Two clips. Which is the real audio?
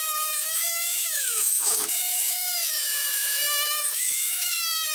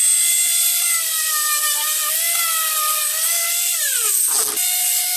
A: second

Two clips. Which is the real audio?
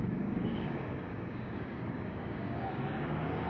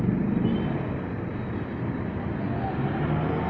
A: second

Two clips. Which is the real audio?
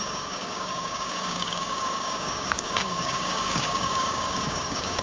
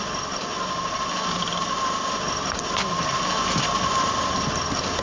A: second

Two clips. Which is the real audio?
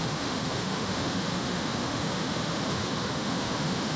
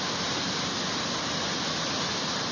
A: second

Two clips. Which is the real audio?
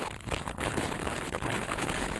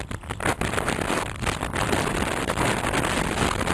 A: second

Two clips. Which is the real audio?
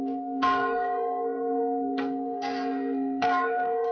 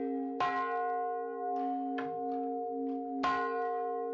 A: second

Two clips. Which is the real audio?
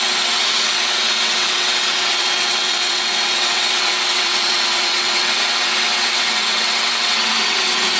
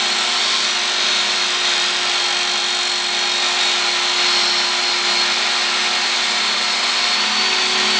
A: second